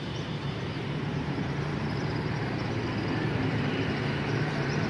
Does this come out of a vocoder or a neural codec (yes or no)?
yes